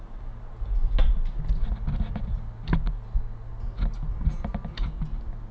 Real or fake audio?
real